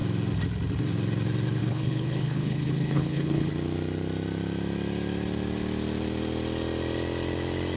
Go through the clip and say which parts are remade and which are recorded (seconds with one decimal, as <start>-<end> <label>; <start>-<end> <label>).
0.0-1.6 recorded; 1.6-3.5 remade; 3.5-7.8 recorded